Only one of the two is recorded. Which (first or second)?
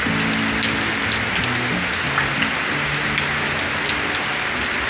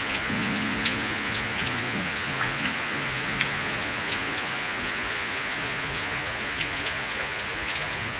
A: first